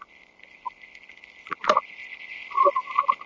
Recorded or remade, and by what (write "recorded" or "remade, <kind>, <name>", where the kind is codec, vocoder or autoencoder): recorded